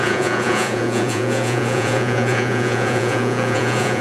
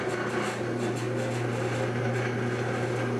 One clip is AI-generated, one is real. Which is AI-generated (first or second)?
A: first